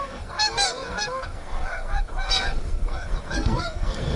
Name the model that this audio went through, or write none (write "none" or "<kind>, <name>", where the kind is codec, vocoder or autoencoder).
codec, SNAC